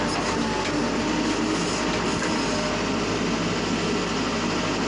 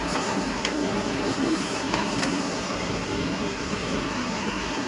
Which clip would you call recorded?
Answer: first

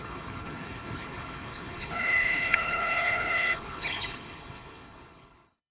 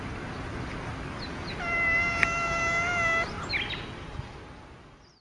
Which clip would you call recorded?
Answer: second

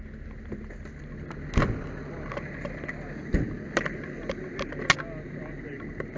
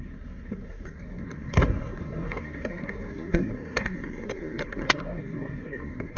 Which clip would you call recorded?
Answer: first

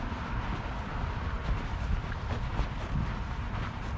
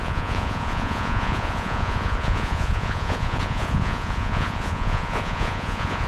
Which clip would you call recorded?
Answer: first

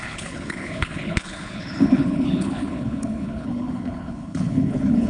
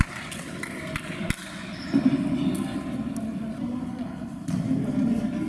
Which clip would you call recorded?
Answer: second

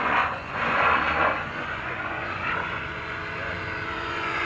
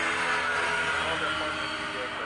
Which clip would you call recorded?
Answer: second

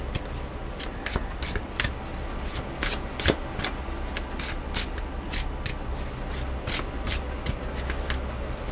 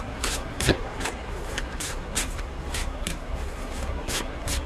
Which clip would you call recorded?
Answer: first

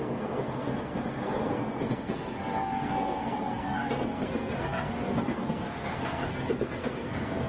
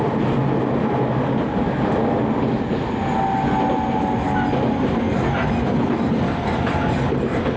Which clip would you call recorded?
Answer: second